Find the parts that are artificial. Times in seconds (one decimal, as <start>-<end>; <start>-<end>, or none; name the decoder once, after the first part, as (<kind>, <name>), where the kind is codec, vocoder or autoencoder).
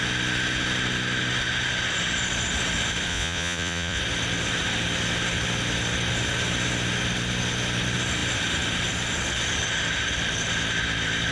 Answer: 3.1-4.0 (vocoder, Vocos)